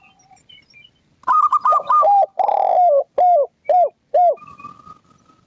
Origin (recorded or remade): recorded